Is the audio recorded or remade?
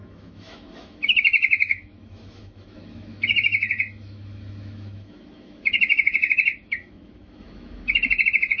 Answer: remade